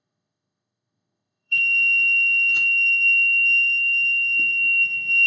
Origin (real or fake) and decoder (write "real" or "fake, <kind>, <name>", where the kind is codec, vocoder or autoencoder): fake, autoencoder, DAC-VAE